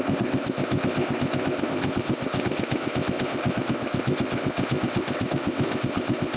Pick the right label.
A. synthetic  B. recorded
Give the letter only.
A